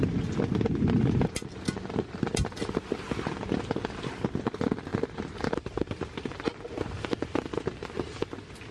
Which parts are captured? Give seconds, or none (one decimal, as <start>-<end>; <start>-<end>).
0.0-8.7